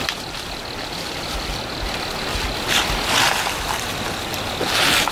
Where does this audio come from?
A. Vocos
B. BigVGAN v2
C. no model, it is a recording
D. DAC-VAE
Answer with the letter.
C